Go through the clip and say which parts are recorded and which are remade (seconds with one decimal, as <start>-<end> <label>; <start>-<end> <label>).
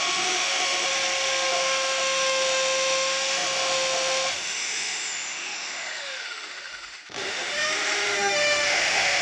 0.0-0.9 remade; 0.9-1.5 recorded; 1.5-9.2 remade